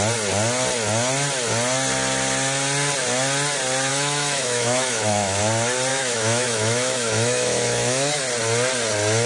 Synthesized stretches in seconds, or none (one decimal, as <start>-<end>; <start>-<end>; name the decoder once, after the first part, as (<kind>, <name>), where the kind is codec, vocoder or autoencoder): 3.9-5.4 (autoencoder, DAC-VAE); 5.9-8.2